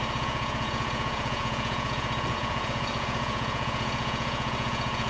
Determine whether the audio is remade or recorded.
remade